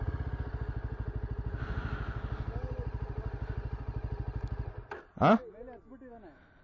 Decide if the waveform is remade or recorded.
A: recorded